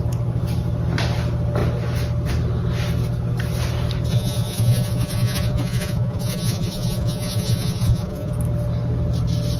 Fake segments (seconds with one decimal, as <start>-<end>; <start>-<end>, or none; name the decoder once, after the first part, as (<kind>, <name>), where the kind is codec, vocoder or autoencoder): 4.1-8.3 (vocoder, Vocos)